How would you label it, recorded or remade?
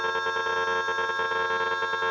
recorded